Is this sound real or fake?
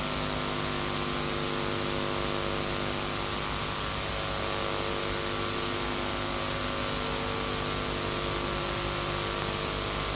real